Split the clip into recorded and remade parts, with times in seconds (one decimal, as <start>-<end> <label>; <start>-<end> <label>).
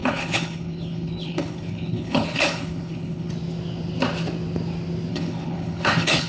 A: 0.0-3.3 remade; 3.3-5.1 recorded; 5.1-6.3 remade